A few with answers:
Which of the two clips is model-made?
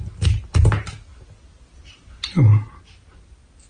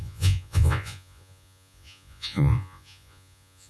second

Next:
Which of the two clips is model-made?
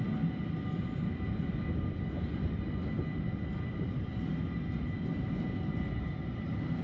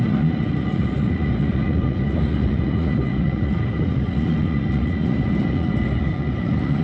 second